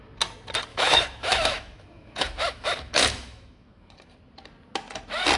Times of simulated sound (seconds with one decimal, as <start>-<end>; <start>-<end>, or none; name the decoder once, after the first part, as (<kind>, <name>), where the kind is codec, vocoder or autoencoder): 0.7-3.9 (autoencoder, DAC-VAE)